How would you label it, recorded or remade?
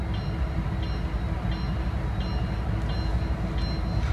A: recorded